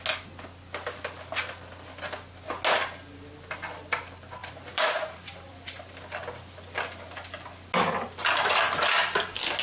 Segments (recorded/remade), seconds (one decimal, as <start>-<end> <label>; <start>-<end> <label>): 0.0-4.4 recorded; 4.4-5.5 remade; 5.5-9.6 recorded